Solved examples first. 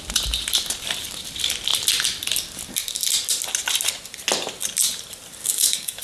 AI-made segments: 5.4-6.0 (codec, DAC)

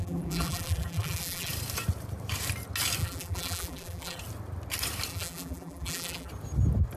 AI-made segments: 0.0-1.5 (vocoder, BigVGAN v2); 3.0-4.2; 5.1-6.3

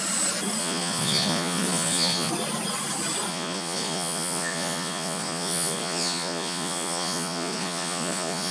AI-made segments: 0.6-2.3 (vocoder, Vocos); 3.3-8.5

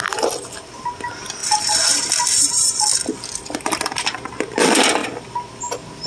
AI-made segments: none

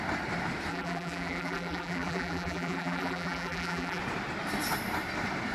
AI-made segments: 0.7-4.0 (vocoder, BigVGAN v2)

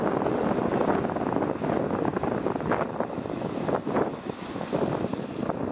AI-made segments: none